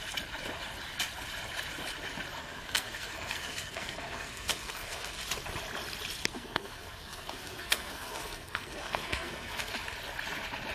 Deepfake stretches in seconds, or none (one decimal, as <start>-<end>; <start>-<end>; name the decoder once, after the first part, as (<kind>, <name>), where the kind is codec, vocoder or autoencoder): 2.4-5.2 (codec, SNAC); 6.3-9.7

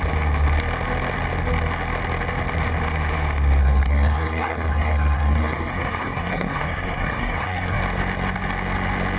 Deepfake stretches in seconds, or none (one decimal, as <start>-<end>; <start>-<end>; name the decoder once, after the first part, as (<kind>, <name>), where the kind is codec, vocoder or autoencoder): 3.6-7.8 (codec, SNAC)

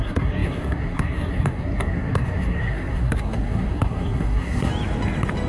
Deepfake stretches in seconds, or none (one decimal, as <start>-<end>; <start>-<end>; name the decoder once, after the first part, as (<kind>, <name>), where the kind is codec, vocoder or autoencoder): 0.0-4.7 (codec, SNAC)